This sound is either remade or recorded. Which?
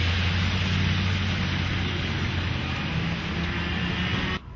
recorded